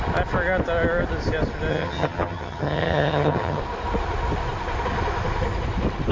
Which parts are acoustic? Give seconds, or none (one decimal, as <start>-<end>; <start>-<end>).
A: 0.0-1.7; 3.6-6.1